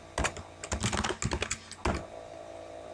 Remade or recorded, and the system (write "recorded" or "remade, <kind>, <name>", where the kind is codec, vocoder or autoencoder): recorded